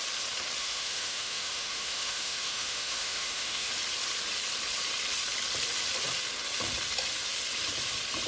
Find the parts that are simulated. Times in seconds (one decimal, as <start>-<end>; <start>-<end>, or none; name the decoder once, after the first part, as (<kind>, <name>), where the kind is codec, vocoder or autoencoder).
0.6-3.7 (autoencoder, DAC-VAE)